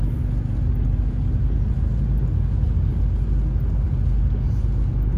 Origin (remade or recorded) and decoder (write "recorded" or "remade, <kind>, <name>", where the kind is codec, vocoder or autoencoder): recorded